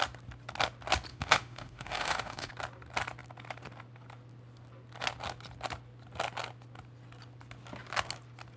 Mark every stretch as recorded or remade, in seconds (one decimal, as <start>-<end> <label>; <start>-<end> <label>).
0.0-1.1 recorded; 1.1-2.5 remade; 2.5-8.6 recorded